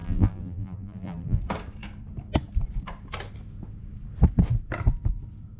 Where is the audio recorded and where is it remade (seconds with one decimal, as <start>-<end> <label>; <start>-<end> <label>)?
0.0-1.4 remade; 1.4-5.6 recorded